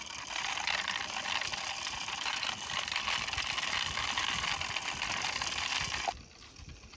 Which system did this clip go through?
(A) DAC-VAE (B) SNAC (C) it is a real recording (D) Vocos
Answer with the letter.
C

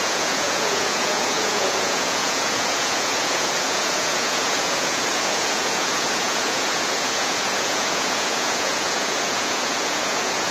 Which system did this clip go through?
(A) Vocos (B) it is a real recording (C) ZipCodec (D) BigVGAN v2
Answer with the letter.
A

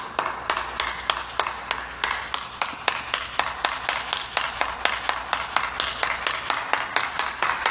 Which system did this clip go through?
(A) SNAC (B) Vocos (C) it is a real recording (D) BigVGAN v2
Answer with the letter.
C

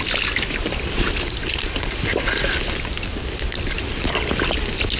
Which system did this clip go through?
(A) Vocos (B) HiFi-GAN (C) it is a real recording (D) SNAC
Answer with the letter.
C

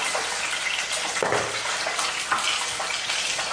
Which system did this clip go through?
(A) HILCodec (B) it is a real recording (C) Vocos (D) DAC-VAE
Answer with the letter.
B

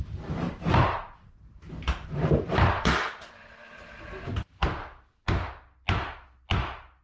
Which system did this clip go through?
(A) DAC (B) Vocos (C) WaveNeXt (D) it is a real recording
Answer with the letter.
D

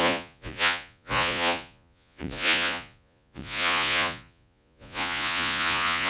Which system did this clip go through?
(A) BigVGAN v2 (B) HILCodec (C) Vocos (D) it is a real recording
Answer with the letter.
C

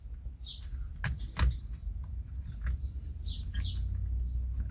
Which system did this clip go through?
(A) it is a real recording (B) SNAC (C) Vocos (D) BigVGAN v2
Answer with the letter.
A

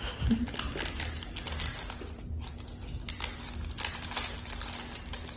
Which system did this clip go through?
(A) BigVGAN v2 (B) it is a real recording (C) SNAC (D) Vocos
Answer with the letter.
B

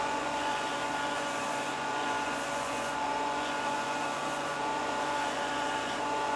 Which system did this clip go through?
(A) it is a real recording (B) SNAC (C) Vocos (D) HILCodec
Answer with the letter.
C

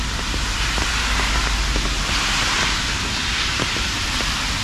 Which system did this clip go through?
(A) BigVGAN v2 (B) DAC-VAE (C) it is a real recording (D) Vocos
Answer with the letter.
C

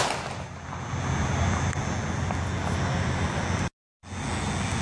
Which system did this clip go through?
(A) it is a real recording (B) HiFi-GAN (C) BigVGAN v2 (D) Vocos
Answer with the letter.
A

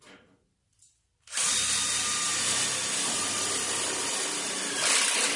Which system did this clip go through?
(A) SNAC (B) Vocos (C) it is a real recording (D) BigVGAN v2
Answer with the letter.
C